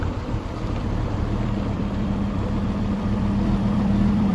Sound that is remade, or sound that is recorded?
remade